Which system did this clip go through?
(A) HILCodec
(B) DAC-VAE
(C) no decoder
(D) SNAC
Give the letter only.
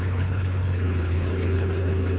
A